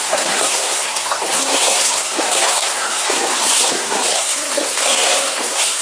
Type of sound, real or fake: fake